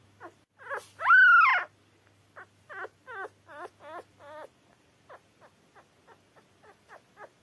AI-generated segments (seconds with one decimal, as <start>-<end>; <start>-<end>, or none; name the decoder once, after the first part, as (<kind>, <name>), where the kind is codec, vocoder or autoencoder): none